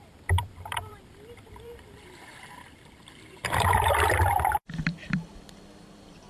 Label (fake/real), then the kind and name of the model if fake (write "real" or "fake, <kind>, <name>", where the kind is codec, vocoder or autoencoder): fake, vocoder, BigVGAN v2